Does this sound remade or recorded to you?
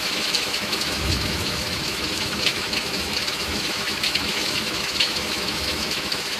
remade